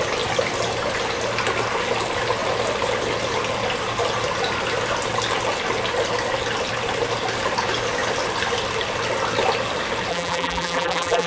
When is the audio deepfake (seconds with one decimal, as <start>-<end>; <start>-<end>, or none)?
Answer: 10.1-11.3